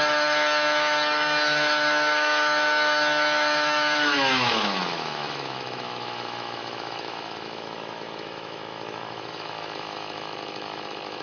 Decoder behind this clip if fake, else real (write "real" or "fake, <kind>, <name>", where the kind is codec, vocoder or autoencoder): fake, autoencoder, DAC-VAE